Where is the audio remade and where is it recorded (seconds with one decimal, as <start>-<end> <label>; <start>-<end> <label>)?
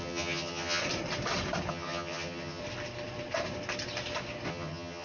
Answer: 0.0-0.8 remade; 0.8-1.7 recorded; 1.7-2.6 remade; 2.6-4.5 recorded; 4.5-5.0 remade